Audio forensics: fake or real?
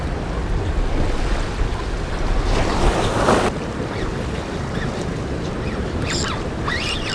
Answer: fake